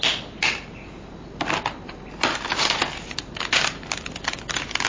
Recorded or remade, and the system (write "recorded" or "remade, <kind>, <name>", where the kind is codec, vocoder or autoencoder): recorded